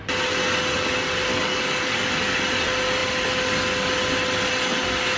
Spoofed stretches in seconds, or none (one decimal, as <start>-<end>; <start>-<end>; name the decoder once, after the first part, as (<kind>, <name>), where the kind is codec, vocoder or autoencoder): 1.3-2.4 (codec, DAC)